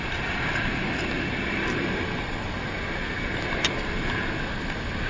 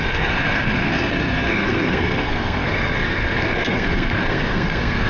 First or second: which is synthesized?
second